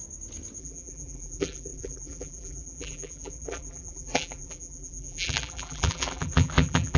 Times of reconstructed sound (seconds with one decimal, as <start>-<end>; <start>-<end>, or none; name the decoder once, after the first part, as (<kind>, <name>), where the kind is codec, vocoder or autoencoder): 0.6-7.0 (vocoder, BigVGAN v2)